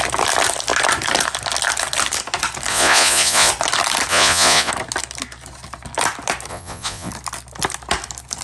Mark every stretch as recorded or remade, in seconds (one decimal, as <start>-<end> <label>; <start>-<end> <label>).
0.0-2.7 recorded; 2.7-3.5 remade; 3.5-4.1 recorded; 4.1-4.7 remade; 4.7-6.5 recorded; 6.5-7.1 remade; 7.1-8.4 recorded